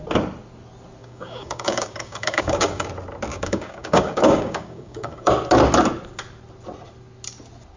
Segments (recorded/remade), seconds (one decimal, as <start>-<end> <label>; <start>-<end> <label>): 0.0-1.0 recorded; 1.0-2.9 remade; 2.9-3.3 recorded; 3.3-5.3 remade; 5.3-7.8 recorded